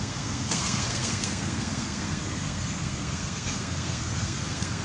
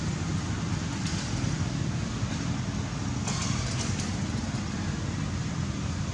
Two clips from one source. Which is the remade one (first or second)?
first